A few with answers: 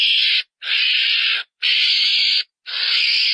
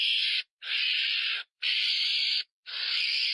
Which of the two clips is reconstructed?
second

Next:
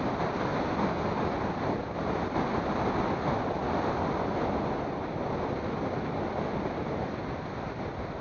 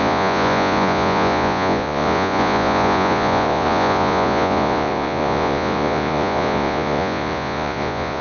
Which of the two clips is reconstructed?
second